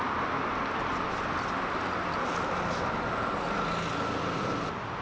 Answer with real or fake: real